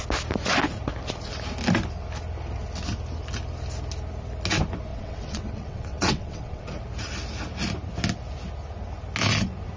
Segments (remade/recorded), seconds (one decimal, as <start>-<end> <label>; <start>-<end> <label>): 0.0-4.9 recorded; 4.9-6.6 remade; 6.6-9.8 recorded